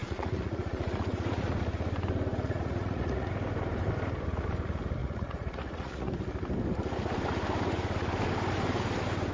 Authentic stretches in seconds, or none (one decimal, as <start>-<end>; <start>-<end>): 1.5-2.3; 3.3-5.0; 6.1-9.3